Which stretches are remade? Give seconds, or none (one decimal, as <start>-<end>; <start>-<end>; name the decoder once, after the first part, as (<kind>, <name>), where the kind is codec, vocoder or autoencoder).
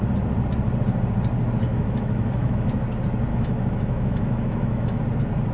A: 1.7-2.7 (autoencoder, DAC-VAE); 3.3-5.0